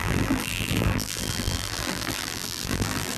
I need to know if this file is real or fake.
fake